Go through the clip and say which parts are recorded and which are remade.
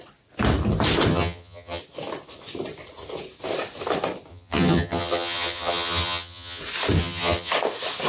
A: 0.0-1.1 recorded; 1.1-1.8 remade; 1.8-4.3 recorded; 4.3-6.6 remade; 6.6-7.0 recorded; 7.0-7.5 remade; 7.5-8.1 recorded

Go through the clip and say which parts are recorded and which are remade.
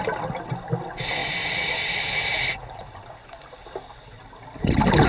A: 0.0-5.1 recorded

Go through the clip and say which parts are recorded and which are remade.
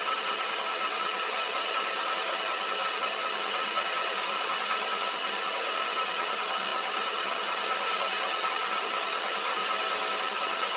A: 0.0-9.6 remade; 9.6-10.2 recorded; 10.2-10.8 remade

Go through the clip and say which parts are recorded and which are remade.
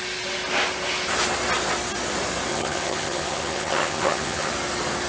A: 0.0-2.5 recorded; 2.5-4.5 remade; 4.5-5.1 recorded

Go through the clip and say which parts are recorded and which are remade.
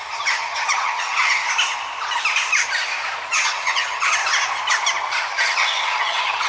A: 0.0-1.4 remade; 1.4-3.3 recorded; 3.3-4.2 remade; 4.2-5.3 recorded; 5.3-6.5 remade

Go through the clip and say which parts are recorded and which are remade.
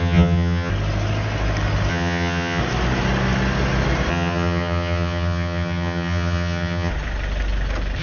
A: 0.0-0.7 remade; 0.7-1.9 recorded; 1.9-2.6 remade; 2.6-4.1 recorded; 4.1-6.9 remade; 6.9-8.0 recorded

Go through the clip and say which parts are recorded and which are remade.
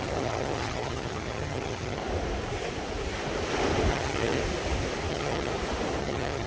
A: 0.0-2.0 remade; 2.0-3.9 recorded; 3.9-4.4 remade; 4.4-5.1 recorded; 5.1-5.5 remade; 5.5-6.0 recorded; 6.0-6.5 remade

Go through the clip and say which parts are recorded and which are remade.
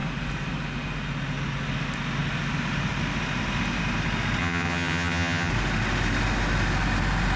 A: 0.0-4.4 recorded; 4.4-5.5 remade; 5.5-7.4 recorded